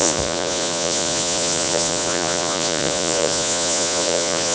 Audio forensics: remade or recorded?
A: remade